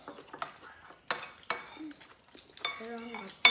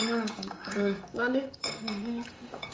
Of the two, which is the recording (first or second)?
first